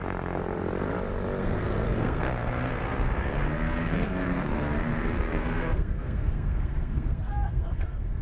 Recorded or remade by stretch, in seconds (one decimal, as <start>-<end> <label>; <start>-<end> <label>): 0.0-0.4 remade; 0.4-1.4 recorded; 1.4-8.2 remade